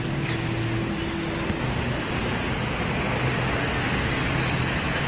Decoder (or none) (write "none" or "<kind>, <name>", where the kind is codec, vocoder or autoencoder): none